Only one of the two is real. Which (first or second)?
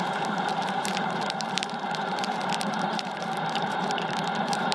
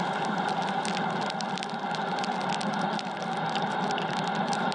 second